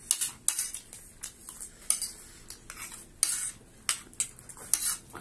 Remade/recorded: recorded